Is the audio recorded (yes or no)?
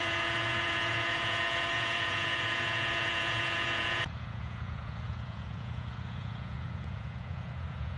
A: no